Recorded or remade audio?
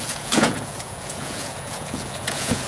remade